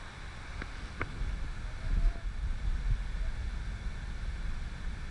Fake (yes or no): no